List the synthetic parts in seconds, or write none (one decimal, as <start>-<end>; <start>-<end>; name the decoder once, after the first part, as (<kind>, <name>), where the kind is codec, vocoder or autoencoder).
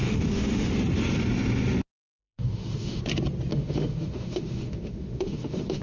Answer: 0.0-0.7 (autoencoder, DAC-VAE); 2.2-3.0; 3.5-5.8